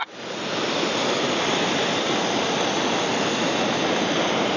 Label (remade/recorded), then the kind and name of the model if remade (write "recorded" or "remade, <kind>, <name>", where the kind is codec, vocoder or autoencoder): recorded